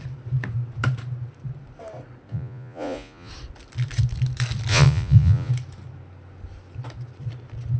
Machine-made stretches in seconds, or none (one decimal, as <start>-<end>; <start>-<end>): 2.3-3.3; 4.7-5.5